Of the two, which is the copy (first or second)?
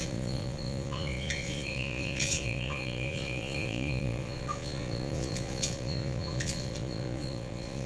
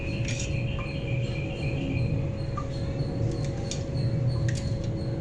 first